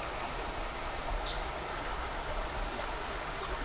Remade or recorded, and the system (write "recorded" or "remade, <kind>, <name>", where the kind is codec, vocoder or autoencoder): recorded